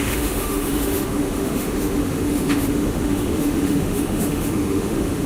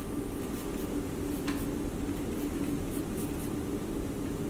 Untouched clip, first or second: second